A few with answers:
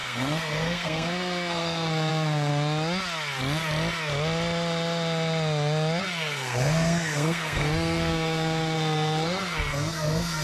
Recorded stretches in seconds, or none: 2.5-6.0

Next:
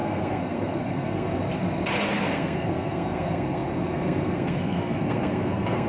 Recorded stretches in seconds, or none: 1.4-2.2

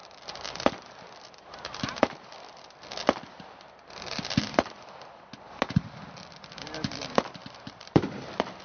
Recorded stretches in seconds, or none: 0.0-7.4

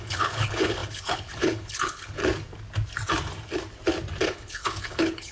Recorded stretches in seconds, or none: 2.2-4.2

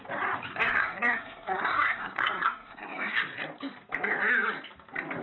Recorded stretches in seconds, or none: 0.0-0.5; 3.2-5.2

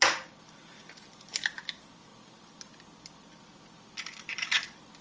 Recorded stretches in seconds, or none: 0.0-5.0

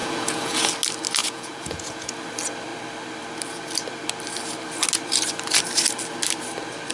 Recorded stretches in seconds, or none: 0.7-1.2; 2.1-6.9